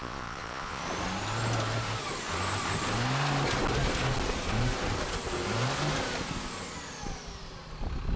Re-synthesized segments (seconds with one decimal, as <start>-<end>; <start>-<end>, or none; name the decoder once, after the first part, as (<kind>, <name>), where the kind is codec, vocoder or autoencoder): 0.0-0.8 (vocoder, Vocos)